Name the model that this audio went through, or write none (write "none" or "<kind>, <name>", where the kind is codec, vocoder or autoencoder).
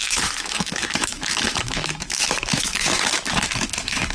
autoencoder, DAC-VAE